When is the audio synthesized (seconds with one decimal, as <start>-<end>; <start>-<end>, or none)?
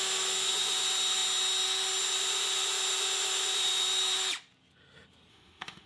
5.3-5.9